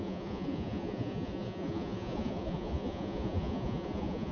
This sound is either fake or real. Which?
fake